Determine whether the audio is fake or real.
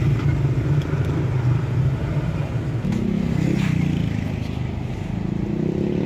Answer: real